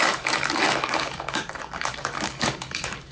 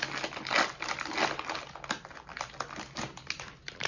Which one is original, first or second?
second